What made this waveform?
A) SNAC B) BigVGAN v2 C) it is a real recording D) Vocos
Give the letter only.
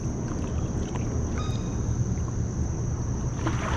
C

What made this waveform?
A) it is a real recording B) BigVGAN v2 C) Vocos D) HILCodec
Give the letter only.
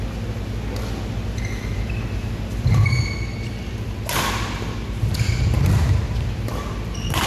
A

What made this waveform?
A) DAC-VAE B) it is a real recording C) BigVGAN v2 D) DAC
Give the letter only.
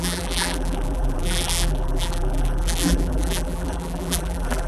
C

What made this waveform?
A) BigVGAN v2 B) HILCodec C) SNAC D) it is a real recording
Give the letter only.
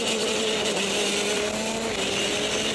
D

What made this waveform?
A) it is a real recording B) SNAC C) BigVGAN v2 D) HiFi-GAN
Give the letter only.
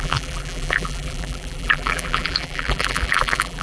C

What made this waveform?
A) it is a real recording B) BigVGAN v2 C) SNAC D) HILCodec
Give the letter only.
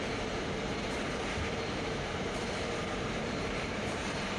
B